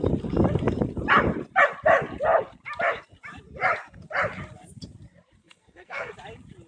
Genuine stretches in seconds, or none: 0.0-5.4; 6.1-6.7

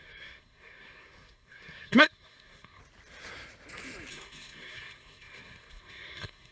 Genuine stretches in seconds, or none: 2.8-4.1

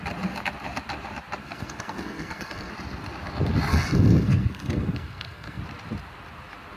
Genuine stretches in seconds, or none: 0.0-1.4; 2.7-3.7; 5.6-6.8